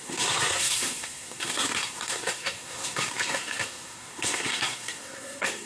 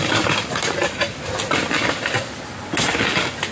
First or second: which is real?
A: second